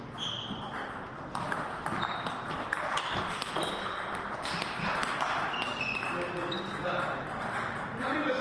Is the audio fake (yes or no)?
no